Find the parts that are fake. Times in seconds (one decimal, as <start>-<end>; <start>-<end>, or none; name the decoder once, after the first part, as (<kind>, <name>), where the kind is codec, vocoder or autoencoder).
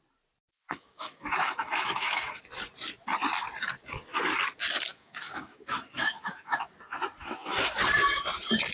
0.5-2.4 (autoencoder, DAC-VAE); 4.9-6.7; 7.2-7.8